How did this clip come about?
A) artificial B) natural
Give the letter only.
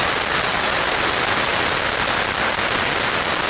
B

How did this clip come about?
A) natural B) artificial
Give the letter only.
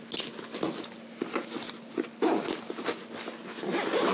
A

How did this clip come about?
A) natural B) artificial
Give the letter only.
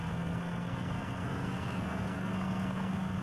B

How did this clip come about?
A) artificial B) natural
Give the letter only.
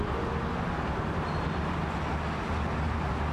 B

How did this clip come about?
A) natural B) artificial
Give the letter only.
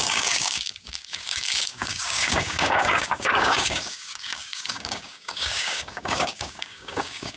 B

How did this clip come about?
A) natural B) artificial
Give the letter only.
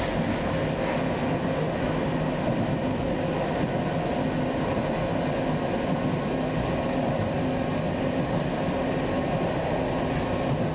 A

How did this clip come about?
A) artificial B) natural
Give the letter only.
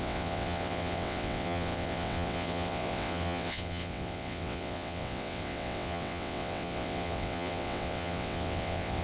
A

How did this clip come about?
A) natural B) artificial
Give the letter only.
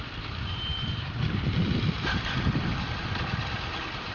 B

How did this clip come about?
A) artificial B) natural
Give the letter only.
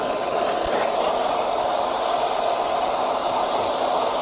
B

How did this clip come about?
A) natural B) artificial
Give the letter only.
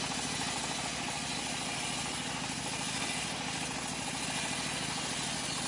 A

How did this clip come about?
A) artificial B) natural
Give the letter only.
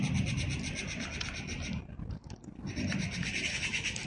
B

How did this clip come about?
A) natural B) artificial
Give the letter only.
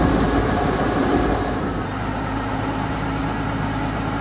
A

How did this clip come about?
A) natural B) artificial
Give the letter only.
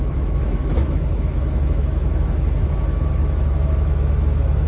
B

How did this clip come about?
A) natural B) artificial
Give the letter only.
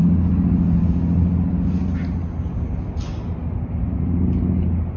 A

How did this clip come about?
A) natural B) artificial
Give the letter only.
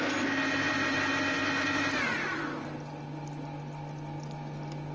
A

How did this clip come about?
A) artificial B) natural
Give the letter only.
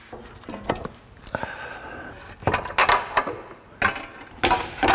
B